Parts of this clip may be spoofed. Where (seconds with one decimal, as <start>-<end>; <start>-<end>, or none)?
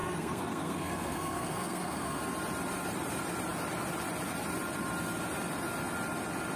0.0-2.2